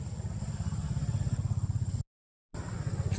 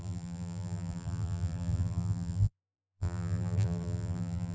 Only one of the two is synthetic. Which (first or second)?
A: second